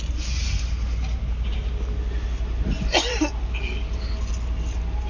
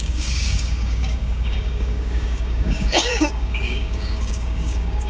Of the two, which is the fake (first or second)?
second